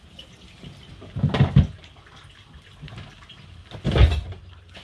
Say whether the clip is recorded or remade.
recorded